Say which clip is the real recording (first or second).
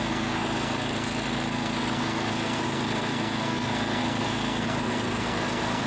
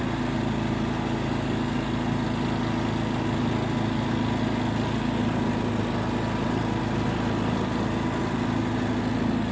second